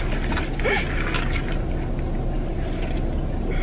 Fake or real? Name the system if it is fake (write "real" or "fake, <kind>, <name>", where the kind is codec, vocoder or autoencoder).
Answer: real